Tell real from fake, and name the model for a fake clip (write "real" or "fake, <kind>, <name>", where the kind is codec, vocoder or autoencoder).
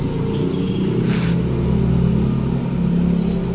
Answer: real